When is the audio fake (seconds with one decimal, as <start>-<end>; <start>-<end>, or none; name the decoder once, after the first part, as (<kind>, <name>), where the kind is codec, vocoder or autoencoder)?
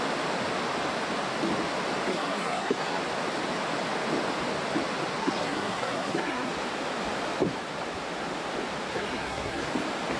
2.1-3.0 (codec, SNAC); 5.2-6.5; 8.9-9.7